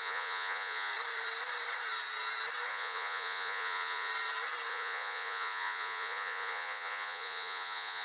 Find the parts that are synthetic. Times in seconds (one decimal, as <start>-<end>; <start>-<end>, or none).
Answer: 0.0-0.9; 2.7-4.1; 4.7-8.0